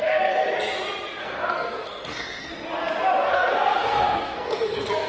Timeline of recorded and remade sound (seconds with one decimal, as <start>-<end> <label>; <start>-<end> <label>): 0.0-0.4 remade; 0.4-1.2 recorded; 1.2-2.5 remade; 2.5-3.3 recorded; 3.3-5.1 remade